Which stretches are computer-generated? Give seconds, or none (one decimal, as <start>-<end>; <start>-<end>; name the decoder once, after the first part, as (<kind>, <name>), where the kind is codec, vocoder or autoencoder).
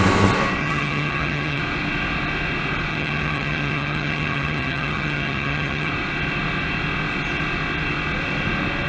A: 0.6-1.6 (vocoder, HiFi-GAN); 2.9-5.9